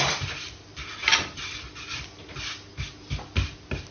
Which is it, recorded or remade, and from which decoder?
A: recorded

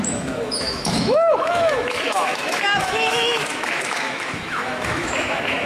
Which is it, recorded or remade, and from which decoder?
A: remade, autoencoder, DAC-VAE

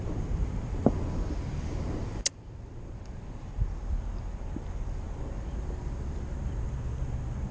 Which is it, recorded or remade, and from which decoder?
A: recorded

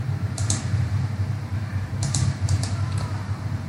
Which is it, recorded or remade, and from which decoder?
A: remade, vocoder, BigVGAN v2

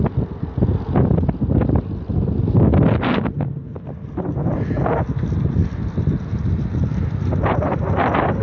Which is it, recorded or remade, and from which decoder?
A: recorded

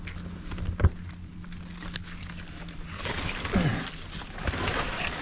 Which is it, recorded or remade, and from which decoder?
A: recorded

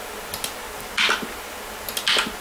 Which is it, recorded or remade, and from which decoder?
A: recorded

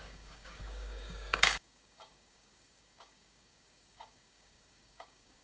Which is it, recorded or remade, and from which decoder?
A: remade, codec, DAC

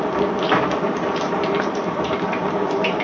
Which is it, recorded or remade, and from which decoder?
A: remade, vocoder, BigVGAN v2